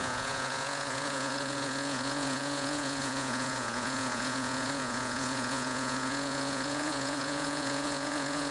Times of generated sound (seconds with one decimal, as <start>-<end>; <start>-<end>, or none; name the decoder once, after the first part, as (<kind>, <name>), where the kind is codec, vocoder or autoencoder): 0.0-8.5 (vocoder, Vocos)